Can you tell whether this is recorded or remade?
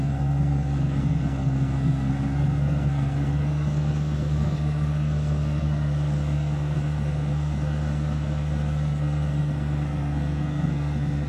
remade